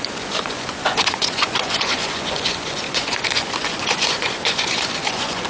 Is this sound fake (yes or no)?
yes